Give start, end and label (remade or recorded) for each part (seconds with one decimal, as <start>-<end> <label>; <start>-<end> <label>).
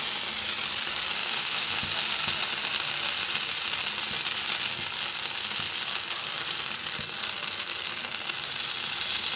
0.0-1.2 recorded; 1.2-1.8 remade; 1.8-9.4 recorded